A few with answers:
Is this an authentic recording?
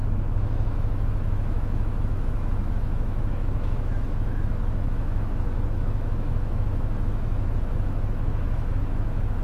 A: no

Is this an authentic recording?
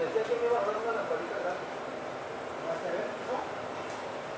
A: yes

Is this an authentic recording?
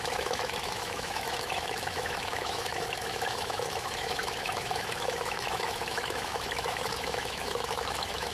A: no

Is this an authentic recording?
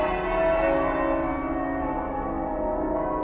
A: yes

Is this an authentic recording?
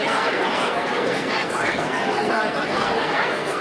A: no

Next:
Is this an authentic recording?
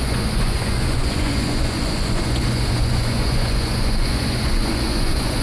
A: no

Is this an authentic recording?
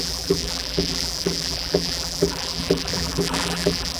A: no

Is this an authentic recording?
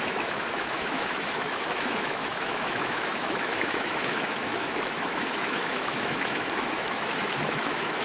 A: no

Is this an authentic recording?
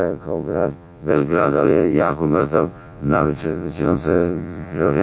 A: no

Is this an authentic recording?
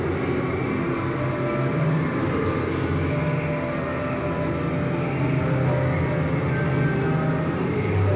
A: yes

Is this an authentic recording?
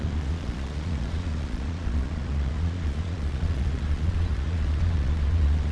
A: no